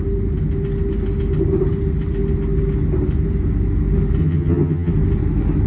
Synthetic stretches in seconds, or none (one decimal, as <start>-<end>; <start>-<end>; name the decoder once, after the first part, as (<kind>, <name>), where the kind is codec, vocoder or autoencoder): 4.2-4.9 (vocoder, HiFi-GAN)

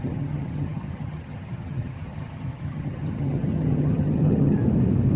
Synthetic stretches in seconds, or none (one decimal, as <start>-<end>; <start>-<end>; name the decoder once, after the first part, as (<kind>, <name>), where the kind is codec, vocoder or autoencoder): 0.0-4.6 (vocoder, HiFi-GAN)

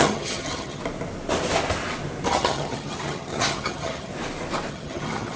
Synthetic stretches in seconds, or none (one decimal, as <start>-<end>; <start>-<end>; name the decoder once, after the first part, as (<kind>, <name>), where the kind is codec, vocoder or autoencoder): 0.0-0.8 (vocoder, HiFi-GAN); 2.3-4.1; 4.7-5.4